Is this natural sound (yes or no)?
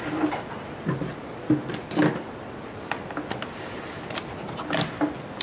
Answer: yes